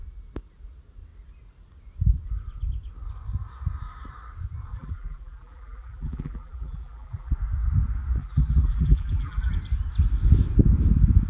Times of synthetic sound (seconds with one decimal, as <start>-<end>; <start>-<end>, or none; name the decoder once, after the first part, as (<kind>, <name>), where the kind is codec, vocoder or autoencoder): 4.7-7.3 (vocoder, BigVGAN v2); 8.2-9.5